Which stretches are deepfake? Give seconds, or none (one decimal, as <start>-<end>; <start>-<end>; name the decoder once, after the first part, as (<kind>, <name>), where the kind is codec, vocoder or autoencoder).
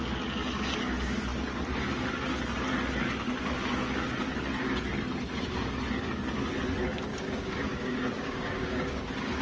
7.1-8.9 (codec, DAC)